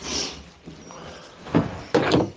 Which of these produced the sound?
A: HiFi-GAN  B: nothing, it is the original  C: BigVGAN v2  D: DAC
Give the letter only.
B